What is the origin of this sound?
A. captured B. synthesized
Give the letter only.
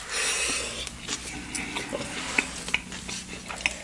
A